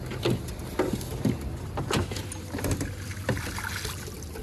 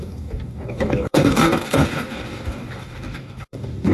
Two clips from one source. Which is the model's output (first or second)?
second